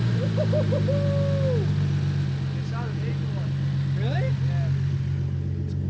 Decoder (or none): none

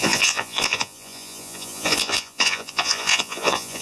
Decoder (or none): vocoder, Vocos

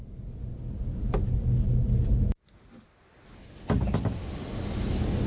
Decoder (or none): none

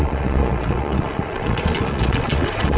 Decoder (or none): vocoder, Vocos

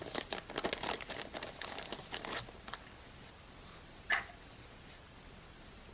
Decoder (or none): none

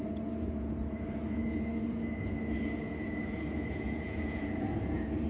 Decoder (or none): vocoder, Vocos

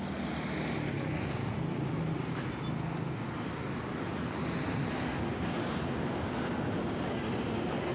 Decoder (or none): none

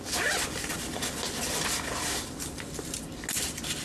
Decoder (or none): none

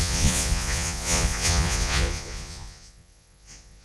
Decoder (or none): vocoder, Vocos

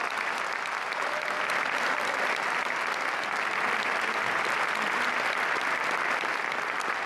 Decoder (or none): none